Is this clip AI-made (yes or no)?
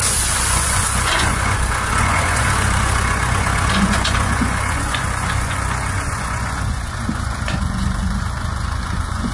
yes